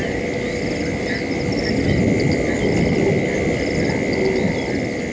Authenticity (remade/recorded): recorded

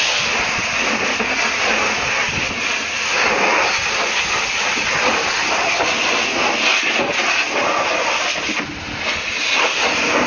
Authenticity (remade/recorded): recorded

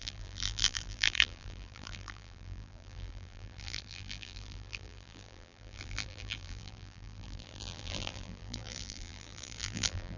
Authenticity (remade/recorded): remade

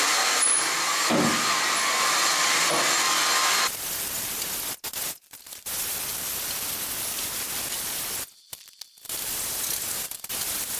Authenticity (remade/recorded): recorded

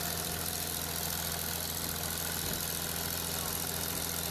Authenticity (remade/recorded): recorded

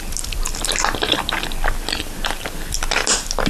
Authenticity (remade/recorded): recorded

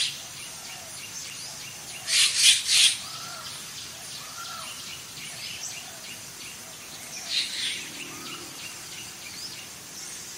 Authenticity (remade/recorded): remade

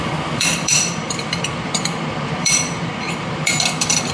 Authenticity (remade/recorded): remade